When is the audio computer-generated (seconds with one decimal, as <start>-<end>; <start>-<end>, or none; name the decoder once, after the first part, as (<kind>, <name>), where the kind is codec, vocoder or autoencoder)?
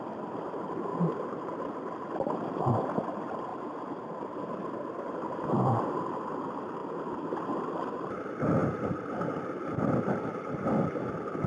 0.0-0.9 (vocoder, BigVGAN v2); 2.6-3.5; 4.7-6.8; 7.7-11.5